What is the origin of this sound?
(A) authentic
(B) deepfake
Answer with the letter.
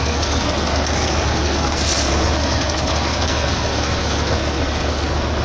B